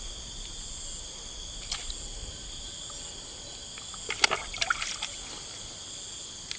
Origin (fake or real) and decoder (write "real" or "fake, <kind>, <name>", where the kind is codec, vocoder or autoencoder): real